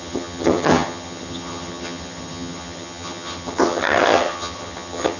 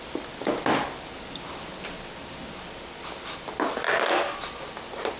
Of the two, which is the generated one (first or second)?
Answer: first